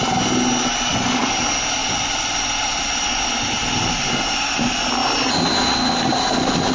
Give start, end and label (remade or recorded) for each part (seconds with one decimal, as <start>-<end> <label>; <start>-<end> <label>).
0.0-0.9 recorded; 0.9-1.4 remade; 1.4-1.8 recorded; 1.8-4.1 remade; 4.1-6.7 recorded